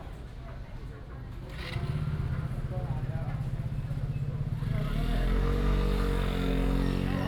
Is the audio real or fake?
real